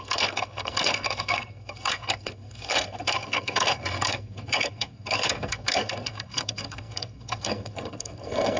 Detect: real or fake fake